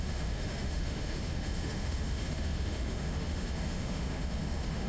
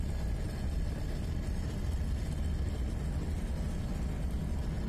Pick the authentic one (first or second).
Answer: second